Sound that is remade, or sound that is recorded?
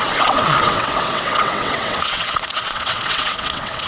remade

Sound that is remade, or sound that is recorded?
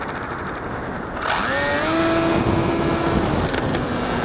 recorded